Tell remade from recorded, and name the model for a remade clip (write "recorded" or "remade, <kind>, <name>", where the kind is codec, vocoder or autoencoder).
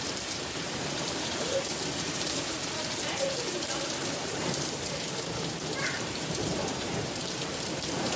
remade, vocoder, BigVGAN v2